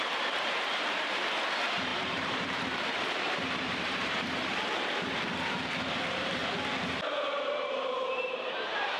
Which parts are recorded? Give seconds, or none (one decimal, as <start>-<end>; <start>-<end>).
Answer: 6.4-7.4